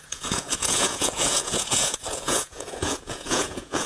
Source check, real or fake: fake